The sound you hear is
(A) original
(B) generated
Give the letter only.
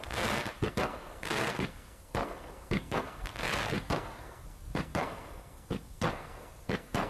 B